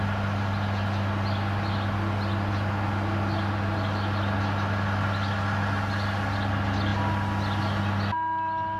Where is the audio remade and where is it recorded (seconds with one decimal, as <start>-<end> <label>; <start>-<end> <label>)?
0.0-8.8 recorded

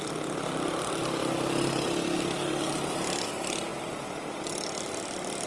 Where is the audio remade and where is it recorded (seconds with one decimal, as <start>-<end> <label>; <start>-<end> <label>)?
0.0-5.5 recorded

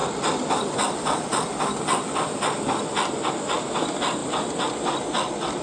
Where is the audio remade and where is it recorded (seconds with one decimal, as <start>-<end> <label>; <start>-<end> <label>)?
0.0-5.6 recorded

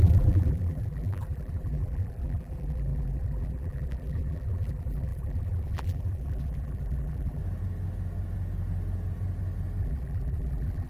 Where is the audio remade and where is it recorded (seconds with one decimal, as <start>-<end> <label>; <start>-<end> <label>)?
0.0-7.4 remade; 7.4-9.8 recorded; 9.8-10.9 remade

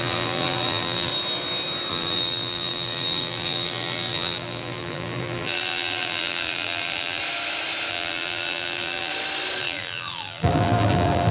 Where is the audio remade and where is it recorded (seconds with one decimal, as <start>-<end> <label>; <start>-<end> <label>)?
0.0-1.1 remade; 1.1-1.9 recorded; 1.9-7.2 remade; 7.2-7.9 recorded; 7.9-9.1 remade; 9.1-9.6 recorded; 9.6-11.3 remade

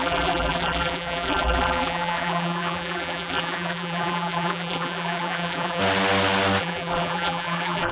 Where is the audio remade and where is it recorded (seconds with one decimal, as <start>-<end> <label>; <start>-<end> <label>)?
0.0-5.8 remade; 5.8-6.6 recorded; 6.6-7.9 remade

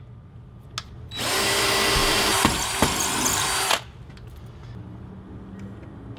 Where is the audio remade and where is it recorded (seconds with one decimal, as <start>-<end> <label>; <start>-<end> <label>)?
0.0-6.2 recorded